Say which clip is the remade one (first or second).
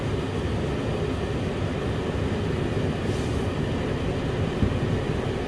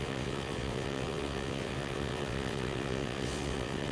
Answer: second